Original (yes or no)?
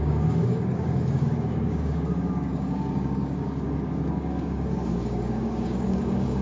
no